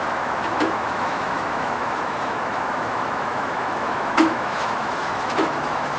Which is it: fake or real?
fake